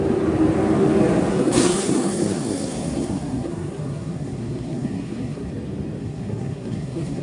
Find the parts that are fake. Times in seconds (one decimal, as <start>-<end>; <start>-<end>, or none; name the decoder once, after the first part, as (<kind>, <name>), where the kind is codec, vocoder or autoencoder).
1.3-5.5 (codec, SNAC); 6.0-7.2